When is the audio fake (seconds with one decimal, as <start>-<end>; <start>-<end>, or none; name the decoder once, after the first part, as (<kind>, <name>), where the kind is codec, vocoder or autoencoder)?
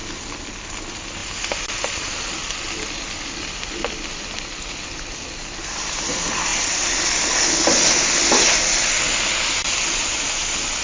none